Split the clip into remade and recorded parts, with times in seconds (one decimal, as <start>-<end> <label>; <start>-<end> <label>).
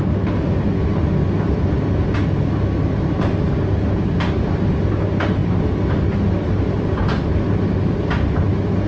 0.0-8.9 recorded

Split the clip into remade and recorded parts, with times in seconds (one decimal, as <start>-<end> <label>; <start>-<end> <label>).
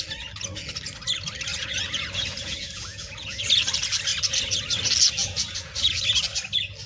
0.0-1.5 recorded; 1.5-3.4 remade; 3.4-5.2 recorded; 5.2-6.0 remade; 6.0-6.9 recorded